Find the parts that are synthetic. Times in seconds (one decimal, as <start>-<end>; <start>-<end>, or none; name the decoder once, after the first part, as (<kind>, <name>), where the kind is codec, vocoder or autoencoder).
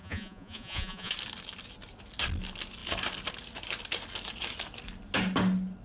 0.0-1.1 (vocoder, Vocos)